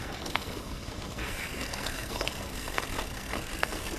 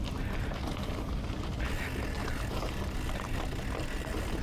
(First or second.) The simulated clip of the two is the first